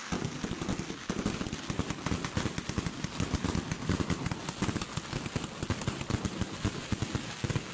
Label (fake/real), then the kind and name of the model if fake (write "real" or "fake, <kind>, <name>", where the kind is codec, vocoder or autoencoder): real